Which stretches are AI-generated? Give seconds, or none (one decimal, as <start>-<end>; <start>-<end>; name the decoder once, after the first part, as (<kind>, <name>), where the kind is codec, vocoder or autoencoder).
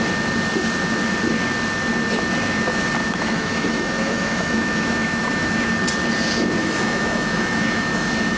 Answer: 3.0-5.7 (autoencoder, DAC-VAE); 6.6-8.4